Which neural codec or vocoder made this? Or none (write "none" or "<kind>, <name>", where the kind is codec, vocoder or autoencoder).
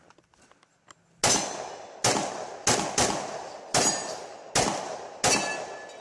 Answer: none